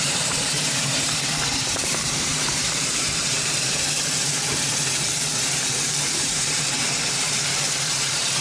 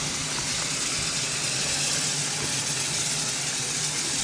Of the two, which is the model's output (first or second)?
first